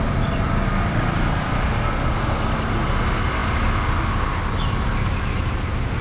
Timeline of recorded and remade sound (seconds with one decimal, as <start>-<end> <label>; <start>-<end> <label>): 0.0-6.0 recorded